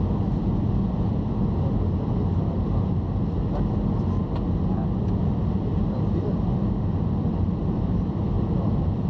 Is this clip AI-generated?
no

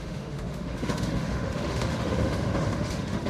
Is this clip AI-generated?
yes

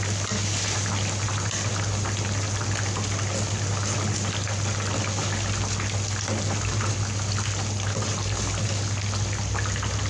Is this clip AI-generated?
no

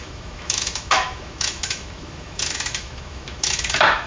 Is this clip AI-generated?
yes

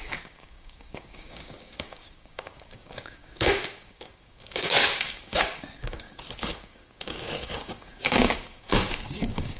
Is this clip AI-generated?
yes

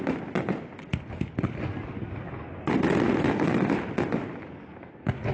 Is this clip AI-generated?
no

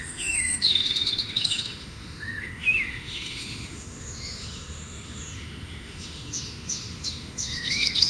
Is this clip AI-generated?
yes